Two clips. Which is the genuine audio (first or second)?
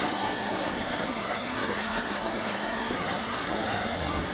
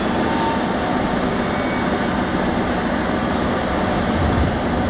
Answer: second